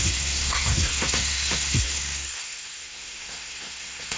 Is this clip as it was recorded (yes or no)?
no